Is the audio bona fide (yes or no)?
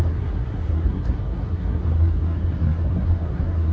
no